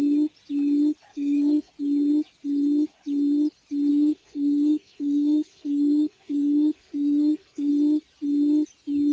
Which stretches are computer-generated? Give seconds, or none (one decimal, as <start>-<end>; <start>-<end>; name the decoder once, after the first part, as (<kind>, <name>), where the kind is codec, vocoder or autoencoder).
1.1-1.7 (codec, SNAC); 3.9-7.7